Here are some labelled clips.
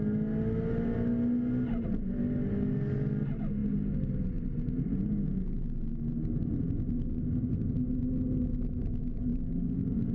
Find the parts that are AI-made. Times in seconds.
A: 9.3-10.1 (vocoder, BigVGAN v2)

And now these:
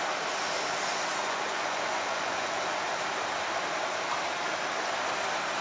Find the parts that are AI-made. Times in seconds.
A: 1.2-2.6 (vocoder, Vocos)

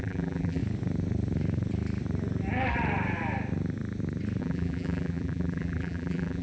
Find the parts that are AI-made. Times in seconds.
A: 0.0-0.6 (vocoder, BigVGAN v2); 4.4-6.4

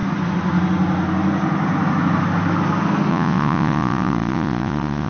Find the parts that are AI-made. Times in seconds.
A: 3.1-5.1 (vocoder, Vocos)

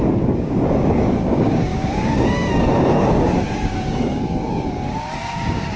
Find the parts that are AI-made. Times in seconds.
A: 0.0-5.8 (codec, DAC)